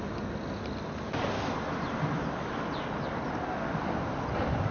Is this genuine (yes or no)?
yes